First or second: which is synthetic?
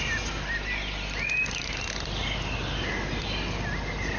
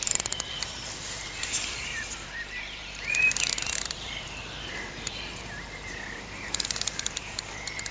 second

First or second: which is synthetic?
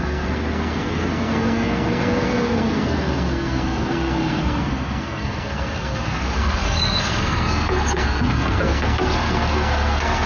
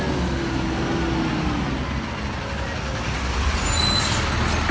first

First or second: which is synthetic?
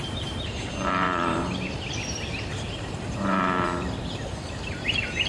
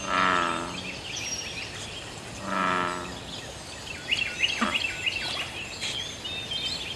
first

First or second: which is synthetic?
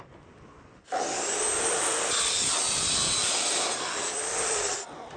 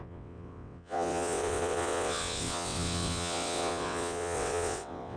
second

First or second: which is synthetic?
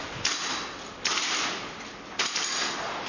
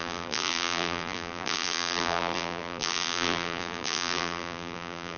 second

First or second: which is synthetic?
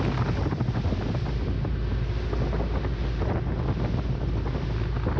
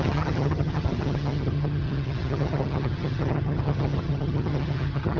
second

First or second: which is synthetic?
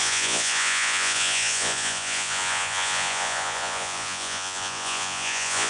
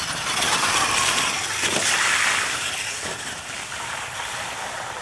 first